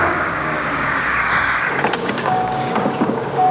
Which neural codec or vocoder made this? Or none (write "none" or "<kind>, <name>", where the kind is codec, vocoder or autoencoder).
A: codec, DAC